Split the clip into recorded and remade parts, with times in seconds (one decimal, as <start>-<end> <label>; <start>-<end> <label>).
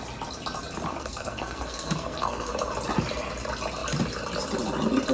0.0-0.9 recorded; 0.9-2.5 remade; 2.5-5.1 recorded